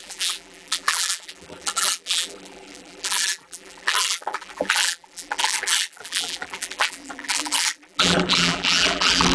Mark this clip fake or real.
fake